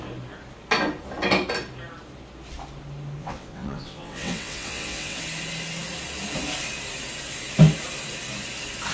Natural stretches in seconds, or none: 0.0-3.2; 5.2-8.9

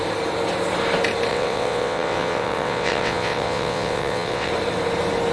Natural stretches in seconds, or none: 0.0-1.3; 4.5-5.3

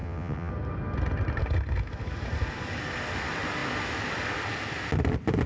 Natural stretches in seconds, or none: 0.5-5.5

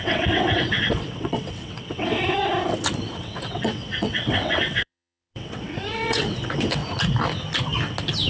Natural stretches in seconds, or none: 2.5-3.1; 6.8-8.3

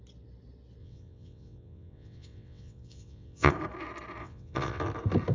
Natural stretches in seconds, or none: 0.0-0.8; 3.5-4.2; 4.8-5.3

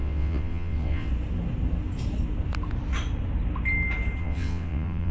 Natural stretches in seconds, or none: 1.1-4.2

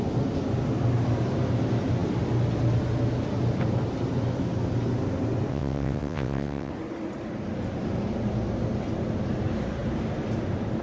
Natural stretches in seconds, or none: 0.0-5.5; 6.7-10.8